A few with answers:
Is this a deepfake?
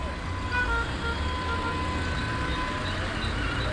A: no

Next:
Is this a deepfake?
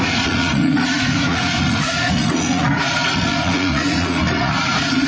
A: yes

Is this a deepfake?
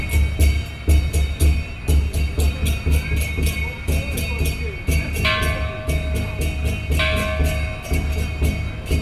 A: no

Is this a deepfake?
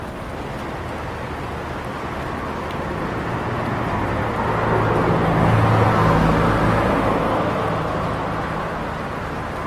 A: no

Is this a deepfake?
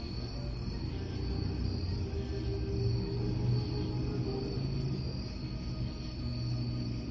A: no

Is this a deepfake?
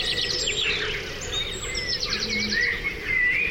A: no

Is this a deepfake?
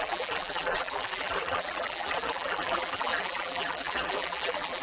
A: yes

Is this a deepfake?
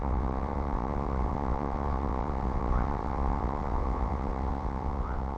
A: yes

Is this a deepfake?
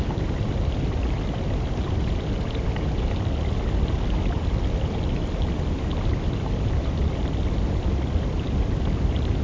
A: no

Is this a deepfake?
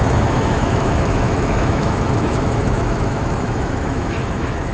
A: yes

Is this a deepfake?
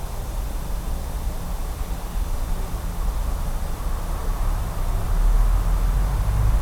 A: no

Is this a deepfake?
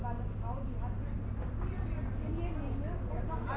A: no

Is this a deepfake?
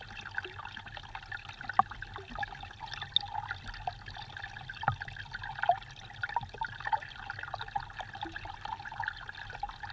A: no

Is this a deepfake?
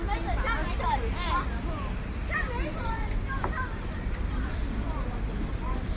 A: no